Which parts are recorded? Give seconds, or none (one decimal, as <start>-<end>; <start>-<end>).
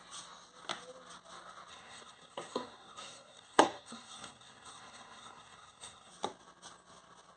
0.0-1.7; 6.1-7.4